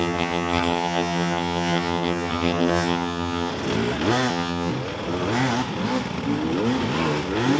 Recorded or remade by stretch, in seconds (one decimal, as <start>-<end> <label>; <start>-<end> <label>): 0.0-3.5 remade; 3.5-4.3 recorded; 4.3-4.7 remade; 4.7-7.6 recorded